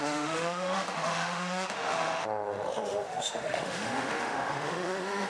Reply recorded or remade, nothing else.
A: remade